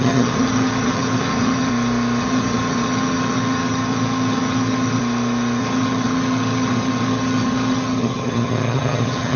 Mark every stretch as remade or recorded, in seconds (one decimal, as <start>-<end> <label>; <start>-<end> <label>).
0.0-1.7 remade; 1.7-2.2 recorded; 2.2-5.0 remade; 5.0-5.6 recorded; 5.6-9.4 remade

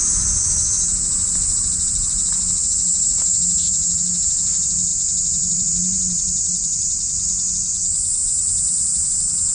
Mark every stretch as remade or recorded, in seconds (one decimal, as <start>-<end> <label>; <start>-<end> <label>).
0.0-8.2 recorded; 8.2-9.1 remade; 9.1-9.5 recorded

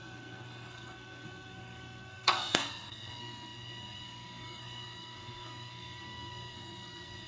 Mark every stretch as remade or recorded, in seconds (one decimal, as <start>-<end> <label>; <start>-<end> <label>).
0.0-7.3 remade

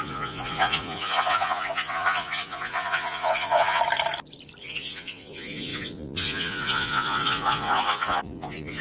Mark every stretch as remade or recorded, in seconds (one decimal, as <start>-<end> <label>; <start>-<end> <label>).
0.0-3.8 remade; 3.8-4.6 recorded; 4.6-8.8 remade

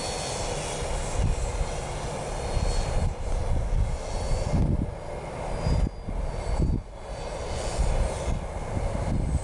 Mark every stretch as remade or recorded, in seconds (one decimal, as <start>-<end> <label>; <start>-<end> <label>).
0.0-9.4 recorded

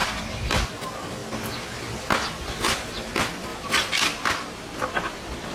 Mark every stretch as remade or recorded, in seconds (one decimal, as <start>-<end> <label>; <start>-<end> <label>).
0.0-0.7 remade; 0.7-3.5 recorded; 3.5-5.5 remade

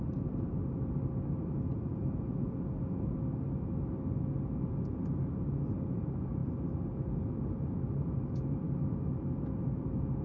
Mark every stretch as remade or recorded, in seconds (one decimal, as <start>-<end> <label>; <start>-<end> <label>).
0.0-1.9 recorded; 1.9-3.0 remade; 3.0-10.2 recorded